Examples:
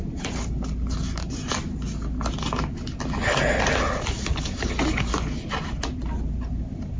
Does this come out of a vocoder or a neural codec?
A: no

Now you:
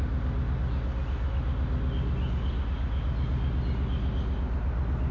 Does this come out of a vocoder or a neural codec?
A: no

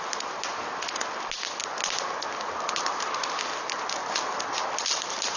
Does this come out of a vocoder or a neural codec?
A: no